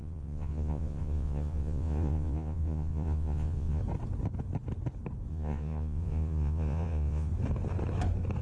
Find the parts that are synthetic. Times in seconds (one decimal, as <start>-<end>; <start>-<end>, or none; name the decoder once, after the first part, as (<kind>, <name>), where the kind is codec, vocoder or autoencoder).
0.0-3.8 (vocoder, Vocos); 5.3-7.3